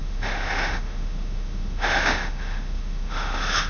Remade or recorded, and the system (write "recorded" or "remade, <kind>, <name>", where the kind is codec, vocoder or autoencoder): remade, autoencoder, DAC-VAE